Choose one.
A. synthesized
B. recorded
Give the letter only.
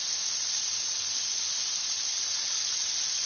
B